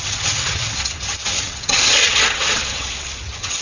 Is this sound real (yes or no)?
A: no